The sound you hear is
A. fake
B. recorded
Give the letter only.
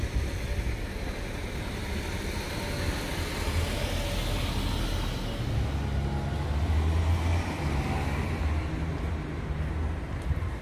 B